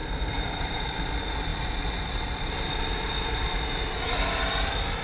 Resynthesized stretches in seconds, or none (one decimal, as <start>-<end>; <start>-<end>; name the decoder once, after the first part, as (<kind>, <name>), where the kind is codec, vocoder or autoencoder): 0.0-0.8 (vocoder, BigVGAN v2)